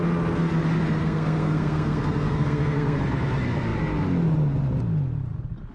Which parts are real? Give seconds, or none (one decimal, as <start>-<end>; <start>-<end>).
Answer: 0.0-1.0; 3.0-5.7